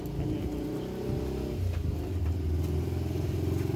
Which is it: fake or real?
real